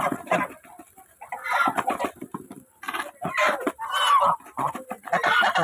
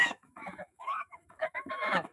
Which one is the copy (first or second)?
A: second